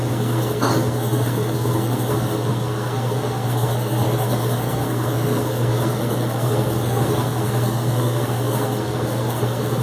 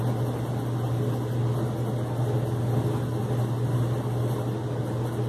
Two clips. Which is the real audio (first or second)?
second